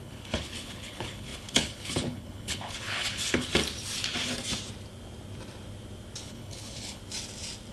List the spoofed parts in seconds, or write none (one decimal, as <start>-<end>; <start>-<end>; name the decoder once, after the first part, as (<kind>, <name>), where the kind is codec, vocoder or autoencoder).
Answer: 0.0-3.5 (codec, HILCodec); 6.2-7.0